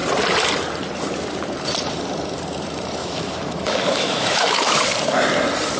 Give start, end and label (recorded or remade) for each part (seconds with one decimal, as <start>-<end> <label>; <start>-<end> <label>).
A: 0.0-3.0 recorded; 3.0-4.8 remade; 4.8-5.8 recorded